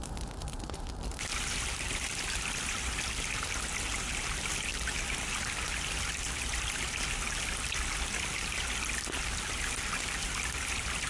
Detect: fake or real real